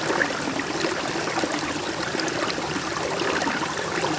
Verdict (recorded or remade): recorded